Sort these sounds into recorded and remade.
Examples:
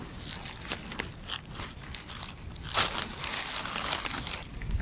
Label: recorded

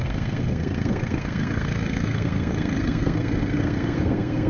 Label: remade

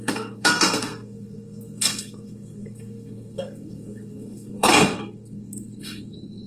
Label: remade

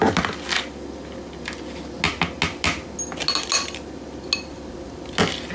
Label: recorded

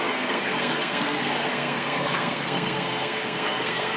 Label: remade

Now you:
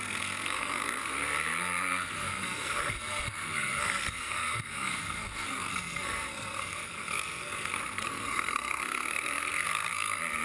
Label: remade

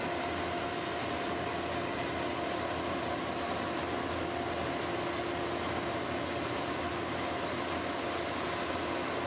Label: recorded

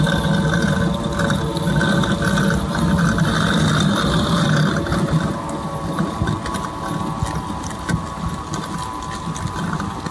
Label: recorded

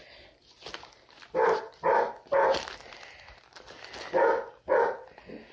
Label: recorded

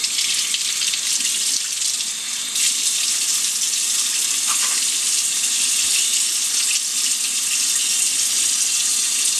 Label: recorded